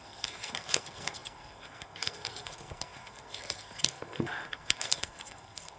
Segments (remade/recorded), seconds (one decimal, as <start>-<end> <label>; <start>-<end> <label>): 0.0-5.8 remade